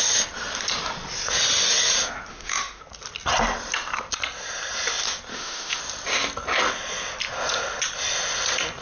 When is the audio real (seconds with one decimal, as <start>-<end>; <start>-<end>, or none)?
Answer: 0.0-2.3; 2.8-5.3; 5.8-8.8